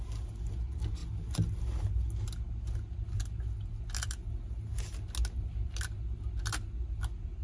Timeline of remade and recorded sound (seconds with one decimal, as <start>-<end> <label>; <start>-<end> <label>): 0.0-7.4 recorded